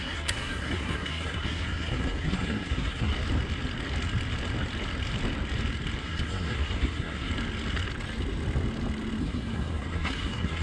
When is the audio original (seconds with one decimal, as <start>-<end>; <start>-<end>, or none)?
3.1-6.0; 7.3-9.2